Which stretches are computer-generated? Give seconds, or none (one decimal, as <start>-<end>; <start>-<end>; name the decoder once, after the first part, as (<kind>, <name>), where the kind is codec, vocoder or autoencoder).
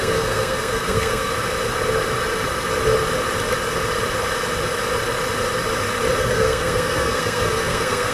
0.0-1.3 (codec, SNAC); 6.2-8.1